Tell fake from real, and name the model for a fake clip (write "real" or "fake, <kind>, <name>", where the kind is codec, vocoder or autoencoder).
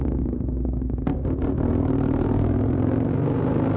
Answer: fake, codec, SNAC